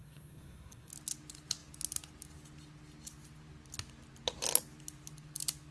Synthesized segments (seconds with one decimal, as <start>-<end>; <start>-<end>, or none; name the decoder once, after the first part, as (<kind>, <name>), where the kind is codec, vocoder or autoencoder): 0.0-0.9 (codec, SNAC)